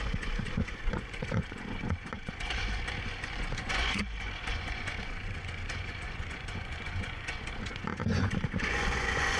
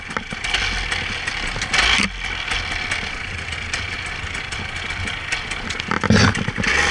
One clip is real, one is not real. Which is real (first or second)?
second